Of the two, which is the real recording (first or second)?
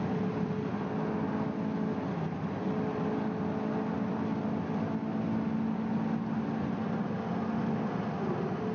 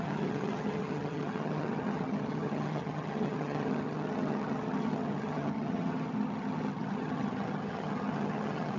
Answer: first